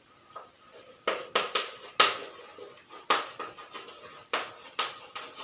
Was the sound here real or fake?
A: real